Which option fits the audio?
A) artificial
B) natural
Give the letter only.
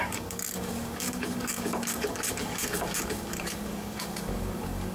A